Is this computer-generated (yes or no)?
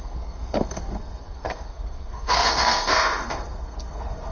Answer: yes